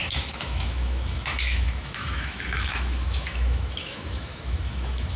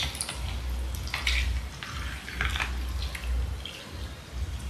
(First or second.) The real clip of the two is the second